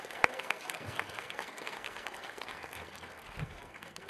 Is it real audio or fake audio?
fake